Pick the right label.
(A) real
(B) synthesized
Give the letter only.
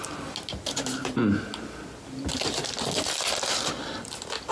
A